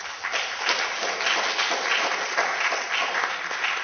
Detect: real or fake real